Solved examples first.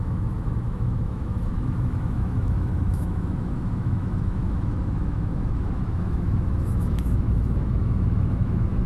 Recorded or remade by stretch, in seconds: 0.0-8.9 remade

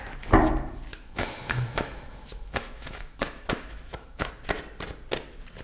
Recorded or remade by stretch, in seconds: 0.0-0.9 recorded; 0.9-4.3 remade; 4.3-5.6 recorded

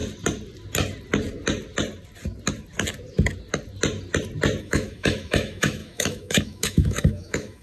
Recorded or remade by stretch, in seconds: 0.0-4.6 recorded; 4.6-7.6 remade

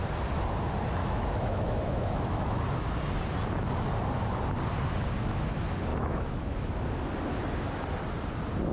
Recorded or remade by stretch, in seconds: 0.0-1.0 recorded; 1.0-2.6 remade; 2.6-5.9 recorded; 5.9-6.7 remade; 6.7-8.7 recorded

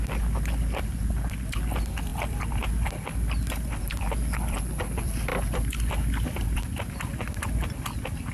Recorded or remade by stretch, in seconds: 0.0-8.3 recorded

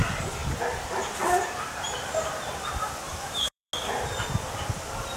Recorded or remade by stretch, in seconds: 0.0-3.1 recorded; 3.1-3.7 remade; 3.7-5.2 recorded